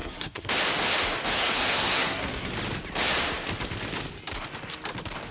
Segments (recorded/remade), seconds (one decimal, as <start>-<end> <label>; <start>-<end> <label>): 0.0-0.5 remade; 0.5-1.3 recorded; 1.3-2.5 remade; 2.5-5.3 recorded